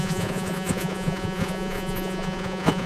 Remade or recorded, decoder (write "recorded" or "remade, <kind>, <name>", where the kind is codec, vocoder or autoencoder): remade, vocoder, Vocos